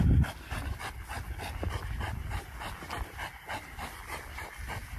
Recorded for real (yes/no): yes